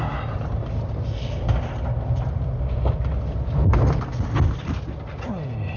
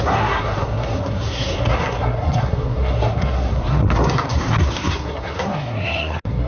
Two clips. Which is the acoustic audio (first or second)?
first